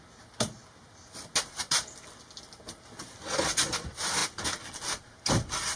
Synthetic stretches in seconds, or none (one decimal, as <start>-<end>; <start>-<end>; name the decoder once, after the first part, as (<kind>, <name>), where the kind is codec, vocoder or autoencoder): none